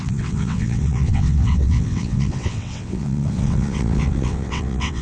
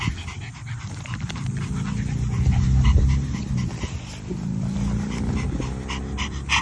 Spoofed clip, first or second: first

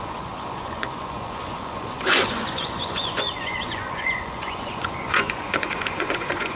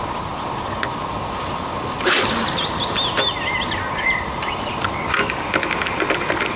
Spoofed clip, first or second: first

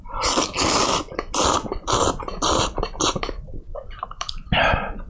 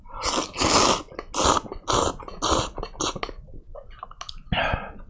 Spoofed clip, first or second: first